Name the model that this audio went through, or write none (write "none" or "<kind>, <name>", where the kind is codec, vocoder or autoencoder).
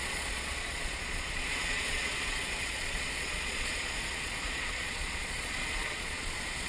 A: vocoder, Vocos